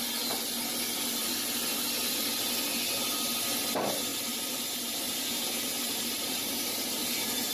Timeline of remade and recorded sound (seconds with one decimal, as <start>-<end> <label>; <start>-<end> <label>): 0.0-4.1 recorded; 4.1-7.5 remade